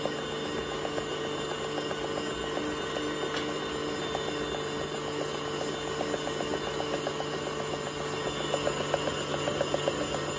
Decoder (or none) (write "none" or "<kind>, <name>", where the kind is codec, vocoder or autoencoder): none